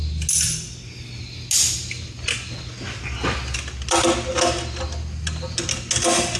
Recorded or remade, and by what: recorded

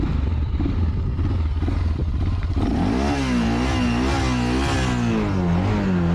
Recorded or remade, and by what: recorded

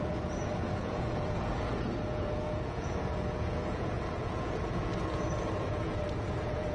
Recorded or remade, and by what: remade, vocoder, Vocos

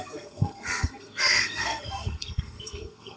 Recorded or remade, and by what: remade, codec, SNAC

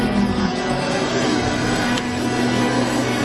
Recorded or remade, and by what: remade, codec, SNAC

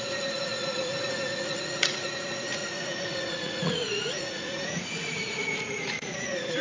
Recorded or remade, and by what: remade, vocoder, Vocos